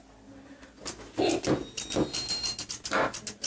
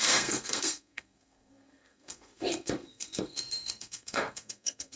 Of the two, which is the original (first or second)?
first